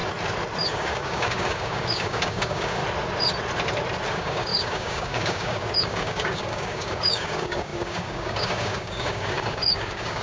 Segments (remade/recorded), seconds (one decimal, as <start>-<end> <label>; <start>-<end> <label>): 0.0-0.7 recorded; 0.7-2.8 remade; 2.8-4.1 recorded; 4.1-10.2 remade